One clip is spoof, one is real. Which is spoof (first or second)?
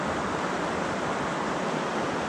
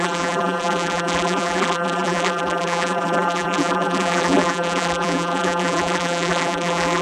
second